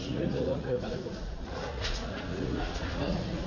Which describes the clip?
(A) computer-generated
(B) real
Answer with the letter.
A